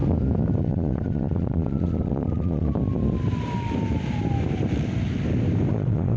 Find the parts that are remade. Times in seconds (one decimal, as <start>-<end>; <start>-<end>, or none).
0.6-2.7; 5.7-6.2

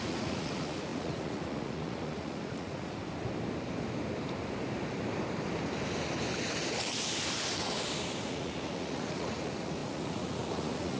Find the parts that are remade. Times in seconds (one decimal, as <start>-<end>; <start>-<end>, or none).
0.0-3.0; 8.2-11.0

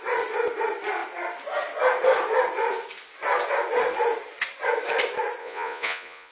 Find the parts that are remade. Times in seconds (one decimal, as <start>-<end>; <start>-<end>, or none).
5.4-6.3

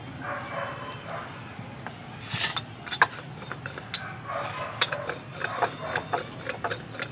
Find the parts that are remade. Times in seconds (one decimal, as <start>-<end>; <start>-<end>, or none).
none

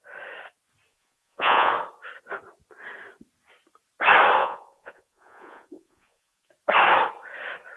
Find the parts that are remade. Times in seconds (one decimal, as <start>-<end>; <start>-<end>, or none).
0.9-1.7; 4.4-6.5

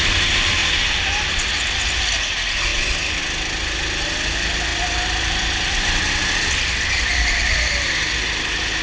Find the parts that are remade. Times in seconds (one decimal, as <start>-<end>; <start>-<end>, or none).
none

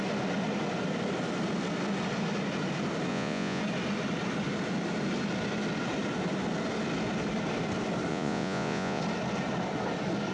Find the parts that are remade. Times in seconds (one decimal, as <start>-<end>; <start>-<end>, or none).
3.1-3.6; 8.1-9.0